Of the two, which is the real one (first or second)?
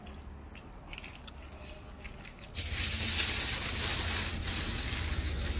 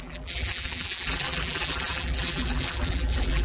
first